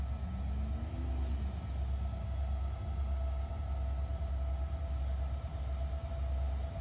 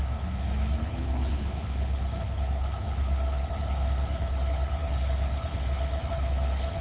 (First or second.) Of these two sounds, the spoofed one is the second